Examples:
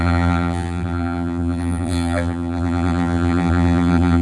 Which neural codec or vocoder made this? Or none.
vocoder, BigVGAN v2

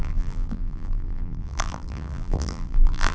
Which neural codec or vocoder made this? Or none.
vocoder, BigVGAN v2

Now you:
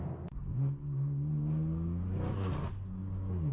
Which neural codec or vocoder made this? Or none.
none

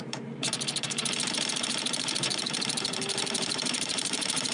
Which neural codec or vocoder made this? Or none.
vocoder, BigVGAN v2